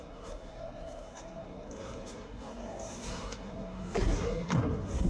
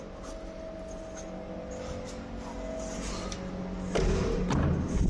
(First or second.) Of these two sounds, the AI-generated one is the first